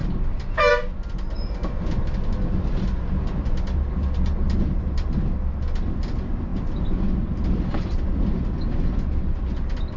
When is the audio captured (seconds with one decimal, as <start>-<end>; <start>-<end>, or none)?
0.7-6.5; 8.8-10.0